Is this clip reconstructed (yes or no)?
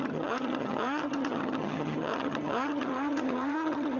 yes